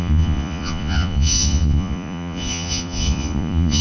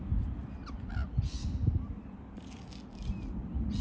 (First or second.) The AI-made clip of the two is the first